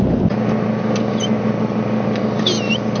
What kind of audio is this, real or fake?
real